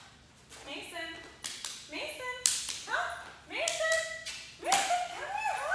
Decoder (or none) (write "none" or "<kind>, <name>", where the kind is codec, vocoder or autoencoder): none